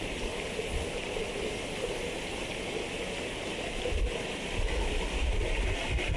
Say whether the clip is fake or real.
real